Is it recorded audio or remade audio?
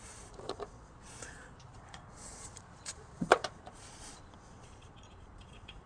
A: remade